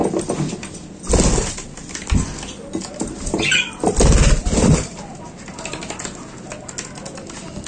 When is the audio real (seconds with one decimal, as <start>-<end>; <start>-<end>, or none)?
0.0-7.7